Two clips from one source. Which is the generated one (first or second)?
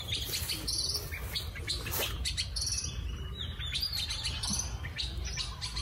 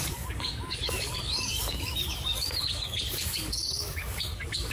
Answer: second